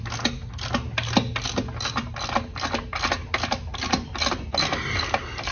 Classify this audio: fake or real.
real